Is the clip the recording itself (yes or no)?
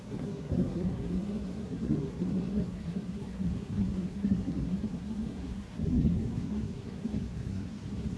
no